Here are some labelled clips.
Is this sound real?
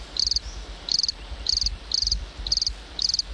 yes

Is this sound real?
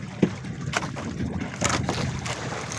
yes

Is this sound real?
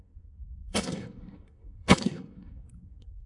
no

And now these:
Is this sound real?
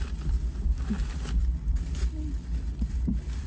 yes